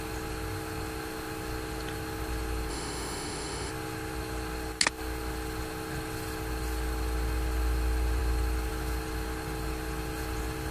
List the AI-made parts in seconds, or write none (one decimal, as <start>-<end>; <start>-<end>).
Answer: 2.7-3.7